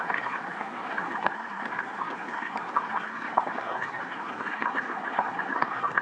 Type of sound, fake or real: fake